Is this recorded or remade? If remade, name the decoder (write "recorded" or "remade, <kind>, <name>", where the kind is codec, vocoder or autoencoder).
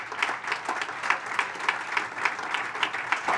recorded